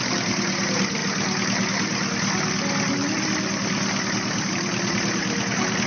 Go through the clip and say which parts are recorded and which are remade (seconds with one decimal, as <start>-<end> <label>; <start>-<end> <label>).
0.0-1.0 remade; 1.0-4.5 recorded; 4.5-5.2 remade; 5.2-5.9 recorded